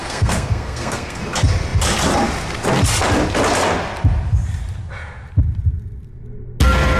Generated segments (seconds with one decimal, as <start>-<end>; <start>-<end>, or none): 0.0-1.2